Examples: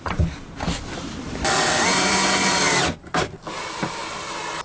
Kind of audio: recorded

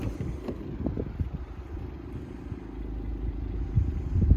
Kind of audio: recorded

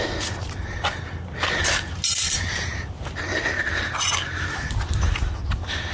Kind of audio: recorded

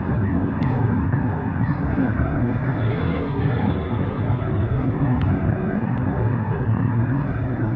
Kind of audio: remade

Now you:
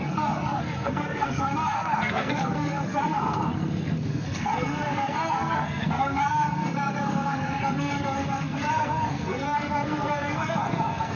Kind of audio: remade